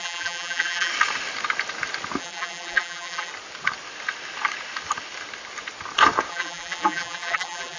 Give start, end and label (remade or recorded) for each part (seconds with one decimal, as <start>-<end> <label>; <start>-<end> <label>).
0.0-0.9 remade; 0.9-2.2 recorded; 2.2-3.3 remade; 3.3-6.3 recorded; 6.3-7.8 remade